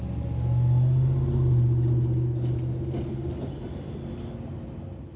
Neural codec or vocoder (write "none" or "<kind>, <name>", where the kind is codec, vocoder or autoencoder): none